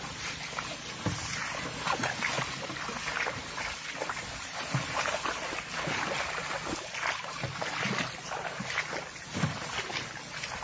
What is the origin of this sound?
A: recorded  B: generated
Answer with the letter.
A